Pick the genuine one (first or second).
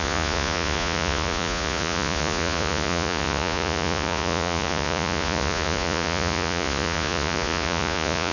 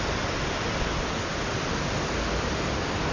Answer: second